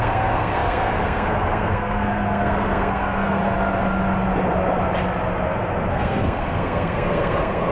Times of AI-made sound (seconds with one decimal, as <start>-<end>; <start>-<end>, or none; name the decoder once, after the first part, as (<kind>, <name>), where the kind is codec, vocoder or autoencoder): 0.0-3.4 (codec, SNAC); 5.9-7.7